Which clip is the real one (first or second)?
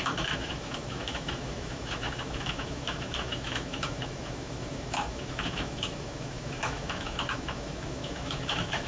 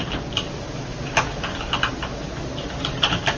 second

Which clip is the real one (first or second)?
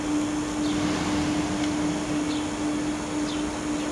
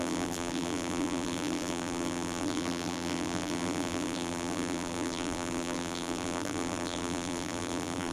first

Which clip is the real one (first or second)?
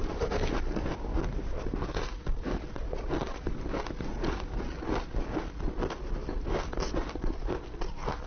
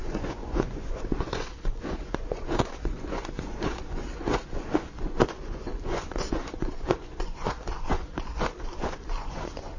first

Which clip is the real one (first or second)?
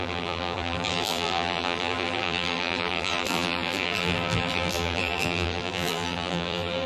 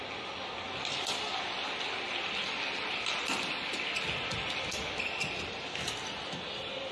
second